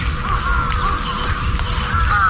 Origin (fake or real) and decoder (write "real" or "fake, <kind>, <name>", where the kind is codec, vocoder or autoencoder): real